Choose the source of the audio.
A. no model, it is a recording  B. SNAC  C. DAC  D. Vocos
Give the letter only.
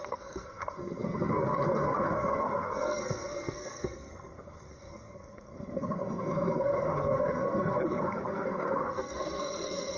B